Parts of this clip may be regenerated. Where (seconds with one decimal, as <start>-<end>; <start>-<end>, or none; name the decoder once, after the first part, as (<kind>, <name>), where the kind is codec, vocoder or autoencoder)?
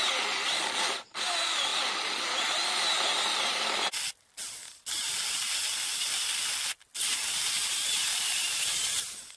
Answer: none